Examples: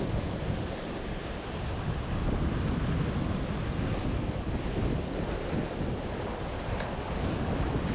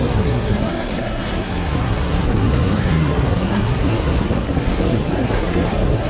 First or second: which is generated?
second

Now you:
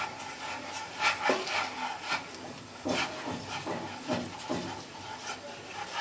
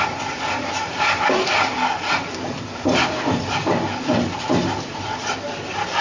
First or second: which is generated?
second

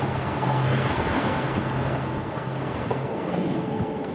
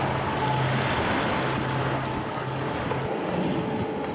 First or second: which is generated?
first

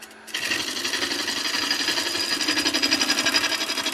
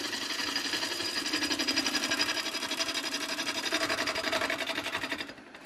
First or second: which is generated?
second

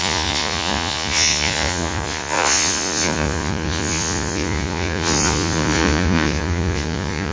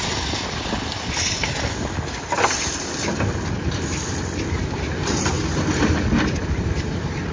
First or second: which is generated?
first